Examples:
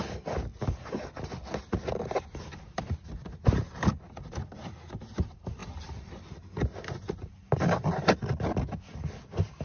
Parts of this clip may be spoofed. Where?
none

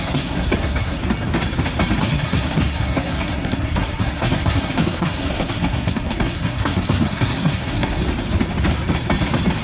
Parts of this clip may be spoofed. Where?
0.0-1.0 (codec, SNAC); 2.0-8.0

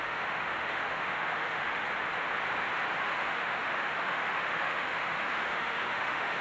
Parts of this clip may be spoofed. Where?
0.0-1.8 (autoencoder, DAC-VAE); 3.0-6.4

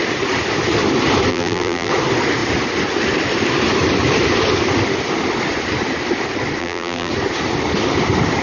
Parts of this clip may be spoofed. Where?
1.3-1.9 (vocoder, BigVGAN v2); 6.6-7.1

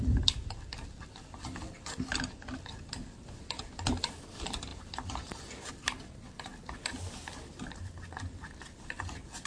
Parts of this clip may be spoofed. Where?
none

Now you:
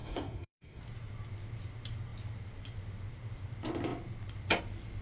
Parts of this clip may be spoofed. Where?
0.0-0.8 (codec, SNAC)

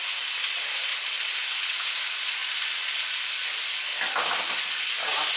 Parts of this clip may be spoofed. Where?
none

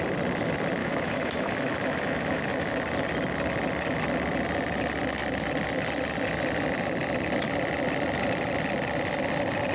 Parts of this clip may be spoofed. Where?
0.8-2.7 (autoencoder, DAC-VAE)